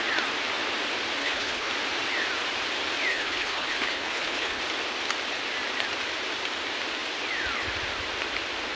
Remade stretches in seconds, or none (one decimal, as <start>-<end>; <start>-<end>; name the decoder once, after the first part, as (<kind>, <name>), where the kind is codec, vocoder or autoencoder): 1.2-1.7 (codec, HILCodec); 3.1-4.6